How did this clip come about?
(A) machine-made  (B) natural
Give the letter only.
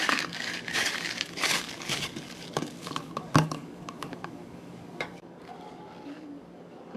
A